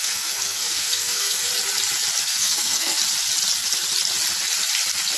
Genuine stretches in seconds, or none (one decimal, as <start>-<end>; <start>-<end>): 1.5-2.2; 3.0-5.2